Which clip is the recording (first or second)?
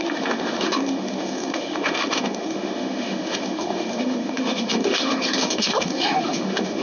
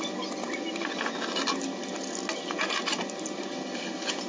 second